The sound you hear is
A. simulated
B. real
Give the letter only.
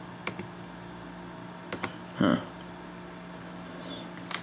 B